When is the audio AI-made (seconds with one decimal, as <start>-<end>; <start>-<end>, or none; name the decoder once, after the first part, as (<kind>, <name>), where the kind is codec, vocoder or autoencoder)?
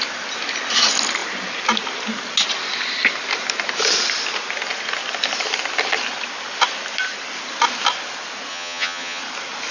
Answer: 8.5-9.2 (vocoder, HiFi-GAN)